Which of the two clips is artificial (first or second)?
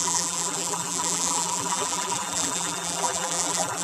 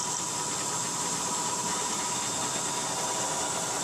first